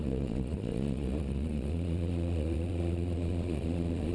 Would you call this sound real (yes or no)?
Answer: no